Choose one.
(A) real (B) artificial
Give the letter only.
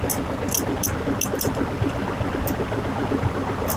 A